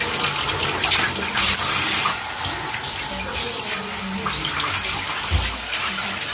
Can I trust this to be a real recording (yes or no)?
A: yes